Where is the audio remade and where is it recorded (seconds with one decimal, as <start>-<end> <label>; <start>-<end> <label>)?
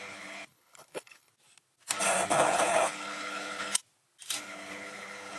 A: 0.0-1.3 remade; 1.3-2.3 recorded; 2.3-3.8 remade; 3.8-4.4 recorded; 4.4-5.4 remade